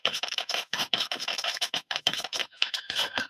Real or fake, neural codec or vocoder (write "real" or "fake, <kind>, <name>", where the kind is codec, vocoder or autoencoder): fake, autoencoder, DAC-VAE